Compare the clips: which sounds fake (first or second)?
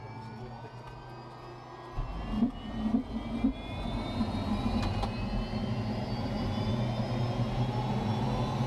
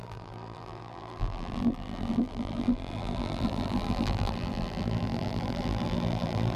second